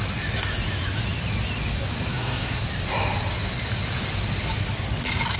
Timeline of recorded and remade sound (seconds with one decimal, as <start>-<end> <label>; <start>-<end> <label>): 0.0-2.1 recorded; 2.1-2.6 remade; 2.6-5.4 recorded